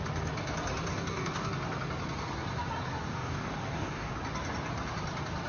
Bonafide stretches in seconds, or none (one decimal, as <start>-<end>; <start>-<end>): 0.0-0.9; 1.5-3.1; 4.1-5.5